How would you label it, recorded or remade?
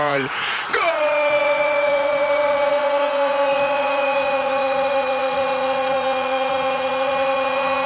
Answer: remade